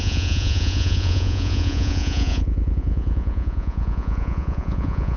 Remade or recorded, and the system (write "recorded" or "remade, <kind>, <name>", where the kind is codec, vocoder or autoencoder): remade, vocoder, Vocos